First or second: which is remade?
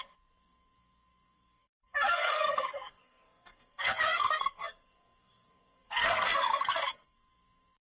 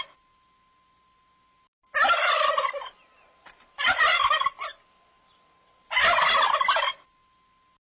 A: first